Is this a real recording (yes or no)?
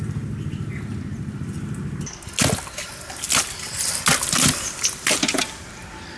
yes